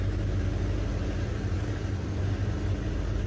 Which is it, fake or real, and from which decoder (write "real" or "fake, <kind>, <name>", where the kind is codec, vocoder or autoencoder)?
real